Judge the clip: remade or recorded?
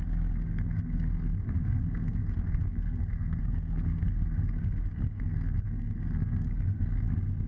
remade